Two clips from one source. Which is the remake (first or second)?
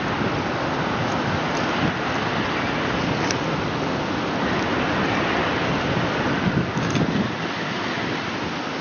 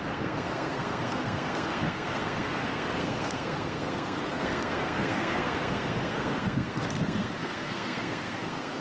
second